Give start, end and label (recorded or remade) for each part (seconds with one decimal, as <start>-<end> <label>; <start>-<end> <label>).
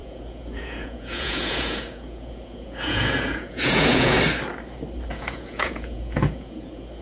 0.0-4.2 remade; 4.2-5.1 recorded; 5.1-7.0 remade